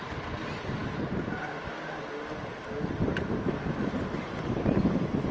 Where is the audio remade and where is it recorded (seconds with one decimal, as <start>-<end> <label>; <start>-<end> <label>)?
0.0-5.3 recorded